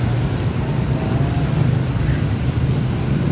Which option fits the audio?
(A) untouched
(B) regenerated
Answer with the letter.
A